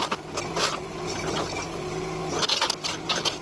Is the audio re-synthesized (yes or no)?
no